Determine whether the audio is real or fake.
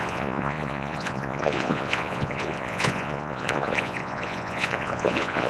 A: fake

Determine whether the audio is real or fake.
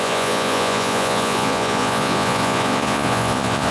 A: fake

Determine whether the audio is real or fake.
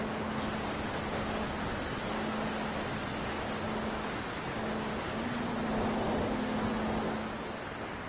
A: real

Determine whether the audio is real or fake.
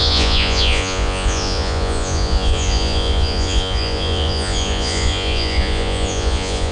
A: fake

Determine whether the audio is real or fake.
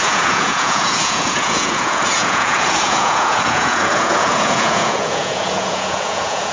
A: fake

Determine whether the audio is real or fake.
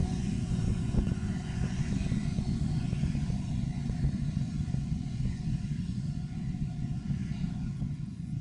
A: fake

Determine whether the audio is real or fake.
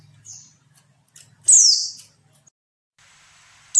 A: real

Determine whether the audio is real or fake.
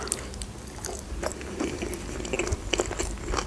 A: real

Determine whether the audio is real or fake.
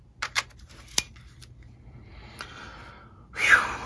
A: real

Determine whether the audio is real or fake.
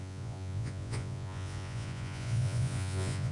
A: fake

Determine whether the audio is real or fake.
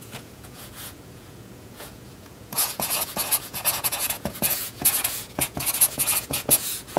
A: fake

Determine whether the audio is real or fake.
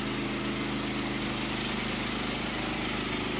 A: real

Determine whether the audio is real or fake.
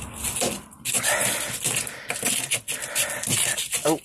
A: real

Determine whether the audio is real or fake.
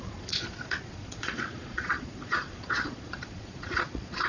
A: fake